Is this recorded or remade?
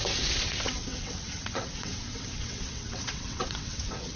remade